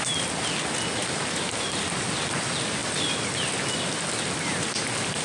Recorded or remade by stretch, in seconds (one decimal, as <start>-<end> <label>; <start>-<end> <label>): 0.0-5.2 recorded